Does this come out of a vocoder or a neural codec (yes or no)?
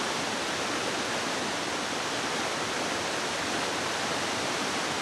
no